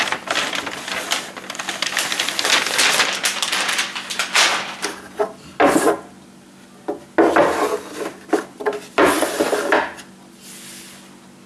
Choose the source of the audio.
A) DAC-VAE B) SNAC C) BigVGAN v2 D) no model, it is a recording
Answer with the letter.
D